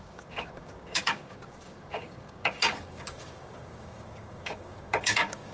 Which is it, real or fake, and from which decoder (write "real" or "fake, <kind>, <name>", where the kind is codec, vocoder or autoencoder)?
fake, codec, DAC